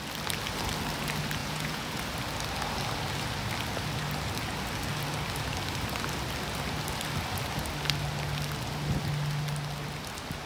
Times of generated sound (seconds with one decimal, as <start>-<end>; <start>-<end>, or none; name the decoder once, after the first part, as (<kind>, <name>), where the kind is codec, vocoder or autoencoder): 1.4-2.0 (vocoder, Vocos)